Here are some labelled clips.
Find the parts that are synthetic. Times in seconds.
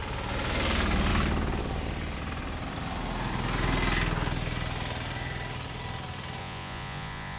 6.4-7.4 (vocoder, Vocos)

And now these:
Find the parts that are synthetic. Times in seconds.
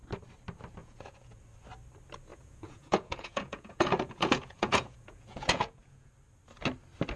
0.8-1.4 (vocoder, Vocos); 2.3-6.1